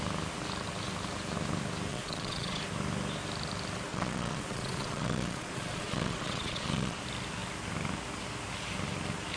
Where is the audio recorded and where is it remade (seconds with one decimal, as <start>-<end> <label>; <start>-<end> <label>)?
0.0-1.9 recorded; 1.9-2.6 remade; 2.6-3.9 recorded; 3.9-7.0 remade; 7.0-9.4 recorded